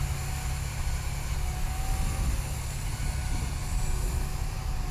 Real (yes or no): yes